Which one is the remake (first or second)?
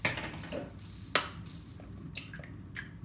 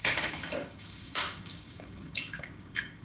second